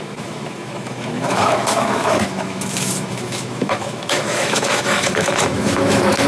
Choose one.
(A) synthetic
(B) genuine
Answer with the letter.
A